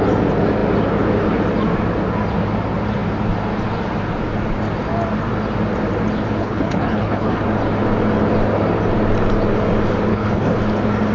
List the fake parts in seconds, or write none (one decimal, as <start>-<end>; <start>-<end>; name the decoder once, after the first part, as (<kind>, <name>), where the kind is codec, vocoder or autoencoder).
6.4-7.4 (codec, HILCodec); 10.1-10.6